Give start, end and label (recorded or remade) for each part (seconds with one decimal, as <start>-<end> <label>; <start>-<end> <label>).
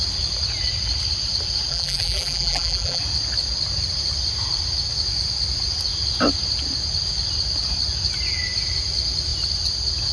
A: 0.0-1.7 recorded; 1.7-3.0 remade; 3.0-10.1 recorded